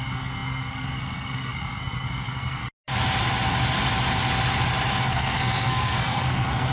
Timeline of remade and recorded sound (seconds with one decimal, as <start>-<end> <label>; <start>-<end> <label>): 0.0-2.6 remade; 2.6-5.1 recorded; 5.1-6.7 remade